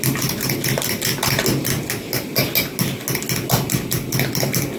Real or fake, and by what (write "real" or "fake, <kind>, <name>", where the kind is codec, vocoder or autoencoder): real